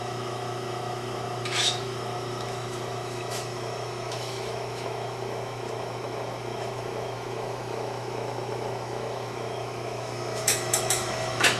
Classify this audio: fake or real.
fake